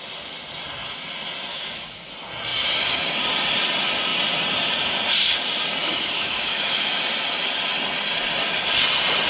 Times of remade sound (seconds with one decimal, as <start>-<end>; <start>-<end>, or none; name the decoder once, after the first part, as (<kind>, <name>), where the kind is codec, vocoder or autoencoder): 1.5-2.1 (autoencoder, DAC-VAE); 5.8-7.0